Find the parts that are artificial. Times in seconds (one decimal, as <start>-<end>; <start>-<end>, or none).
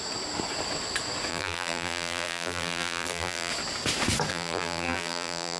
1.3-3.5; 4.3-5.6